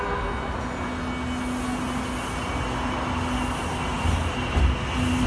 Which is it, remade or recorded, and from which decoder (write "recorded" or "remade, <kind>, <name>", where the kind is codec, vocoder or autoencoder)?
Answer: recorded